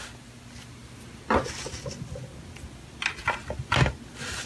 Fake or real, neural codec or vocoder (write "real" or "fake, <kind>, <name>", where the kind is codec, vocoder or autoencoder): real